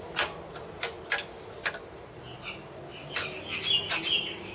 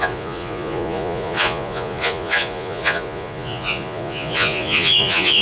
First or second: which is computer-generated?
second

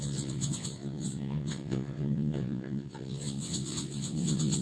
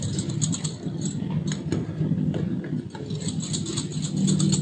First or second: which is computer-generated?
first